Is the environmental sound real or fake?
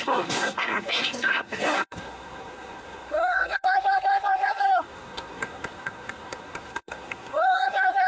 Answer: fake